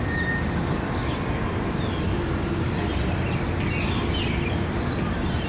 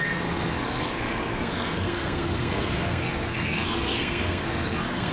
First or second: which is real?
first